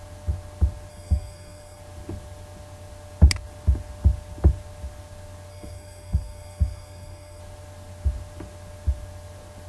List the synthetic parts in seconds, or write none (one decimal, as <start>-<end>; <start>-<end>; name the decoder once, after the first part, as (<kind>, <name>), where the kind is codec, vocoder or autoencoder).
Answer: 0.9-1.8 (codec, SNAC); 5.5-7.4